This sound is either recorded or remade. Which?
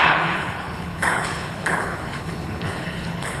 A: remade